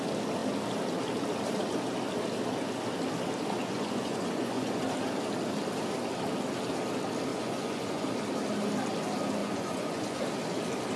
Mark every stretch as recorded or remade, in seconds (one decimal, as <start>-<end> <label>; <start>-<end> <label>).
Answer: 0.0-3.6 recorded; 3.6-4.8 remade; 4.8-7.3 recorded; 7.3-8.1 remade; 8.1-9.4 recorded; 9.4-10.2 remade; 10.2-11.0 recorded